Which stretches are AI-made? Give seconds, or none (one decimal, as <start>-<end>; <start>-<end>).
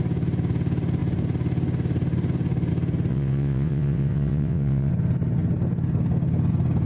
3.1-4.9